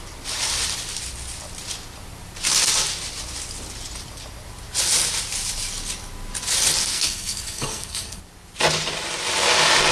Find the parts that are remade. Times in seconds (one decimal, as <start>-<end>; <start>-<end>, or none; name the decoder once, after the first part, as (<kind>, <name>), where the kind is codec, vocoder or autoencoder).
6.9-8.2 (codec, SNAC)